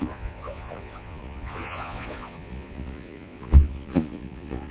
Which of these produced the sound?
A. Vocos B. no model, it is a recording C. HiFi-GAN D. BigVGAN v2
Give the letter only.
A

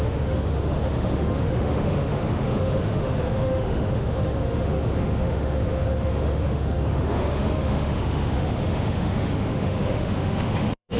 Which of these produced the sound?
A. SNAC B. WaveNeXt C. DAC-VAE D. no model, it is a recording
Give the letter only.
C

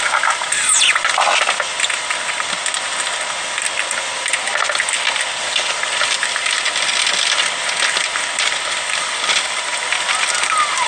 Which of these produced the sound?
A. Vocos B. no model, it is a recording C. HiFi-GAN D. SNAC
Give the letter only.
B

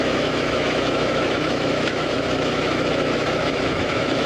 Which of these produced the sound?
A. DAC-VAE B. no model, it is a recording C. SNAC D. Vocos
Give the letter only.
A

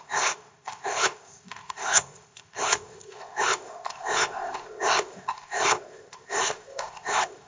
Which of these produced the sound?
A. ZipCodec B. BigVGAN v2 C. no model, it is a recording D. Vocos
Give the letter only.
A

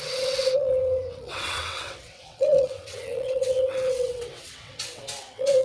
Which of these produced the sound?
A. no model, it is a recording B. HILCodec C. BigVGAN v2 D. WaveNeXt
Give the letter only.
D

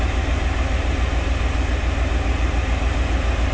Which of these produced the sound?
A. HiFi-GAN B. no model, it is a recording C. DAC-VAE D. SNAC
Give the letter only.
B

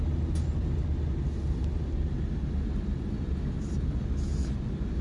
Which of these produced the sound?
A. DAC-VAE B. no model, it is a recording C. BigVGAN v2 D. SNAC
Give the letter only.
B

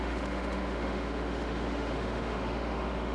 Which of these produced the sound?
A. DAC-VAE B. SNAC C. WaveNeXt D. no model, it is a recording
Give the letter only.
A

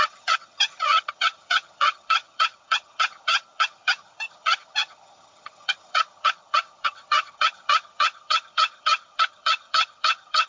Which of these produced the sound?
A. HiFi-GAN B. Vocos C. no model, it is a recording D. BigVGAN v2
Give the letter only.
A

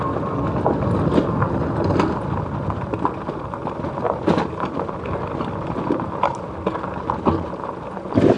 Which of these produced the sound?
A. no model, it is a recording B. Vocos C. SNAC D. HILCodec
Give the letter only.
A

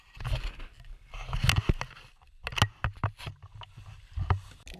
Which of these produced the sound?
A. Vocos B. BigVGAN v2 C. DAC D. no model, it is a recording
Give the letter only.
D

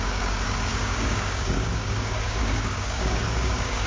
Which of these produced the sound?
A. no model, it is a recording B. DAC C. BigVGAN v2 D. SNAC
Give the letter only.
B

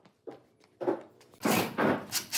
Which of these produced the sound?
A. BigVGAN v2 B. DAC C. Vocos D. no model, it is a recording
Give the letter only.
D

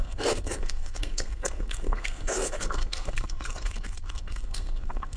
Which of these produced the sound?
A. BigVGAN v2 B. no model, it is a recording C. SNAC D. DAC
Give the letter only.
C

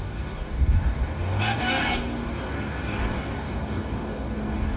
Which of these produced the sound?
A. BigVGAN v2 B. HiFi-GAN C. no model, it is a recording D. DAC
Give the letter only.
D